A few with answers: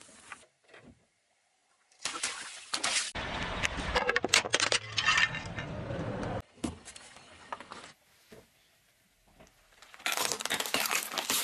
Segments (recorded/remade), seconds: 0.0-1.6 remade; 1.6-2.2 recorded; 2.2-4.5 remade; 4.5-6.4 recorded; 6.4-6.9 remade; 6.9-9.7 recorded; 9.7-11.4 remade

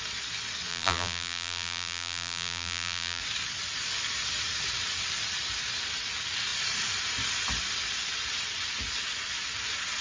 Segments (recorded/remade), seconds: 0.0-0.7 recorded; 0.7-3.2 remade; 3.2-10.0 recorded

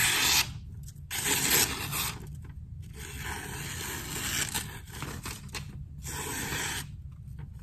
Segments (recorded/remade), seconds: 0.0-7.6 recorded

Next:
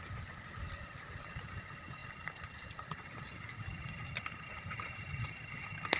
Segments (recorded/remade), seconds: 0.0-2.0 recorded; 2.0-4.9 remade; 4.9-6.0 recorded

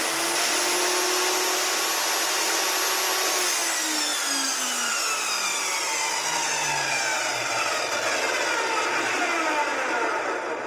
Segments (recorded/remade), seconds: 0.0-7.1 recorded; 7.1-7.8 remade; 7.8-10.7 recorded

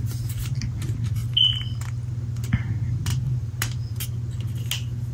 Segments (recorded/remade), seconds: 0.0-3.1 recorded; 3.1-3.9 remade; 3.9-5.1 recorded

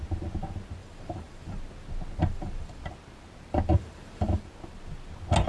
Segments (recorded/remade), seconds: 0.0-0.8 recorded; 0.8-1.6 remade; 1.6-2.2 recorded; 2.2-2.8 remade; 2.8-3.7 recorded; 3.7-4.4 remade; 4.4-5.5 recorded